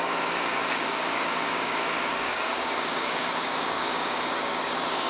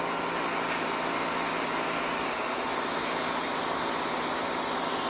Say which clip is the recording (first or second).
second